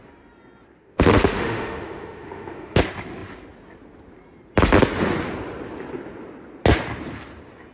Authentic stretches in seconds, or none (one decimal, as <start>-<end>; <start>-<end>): 0.0-0.8; 2.8-7.7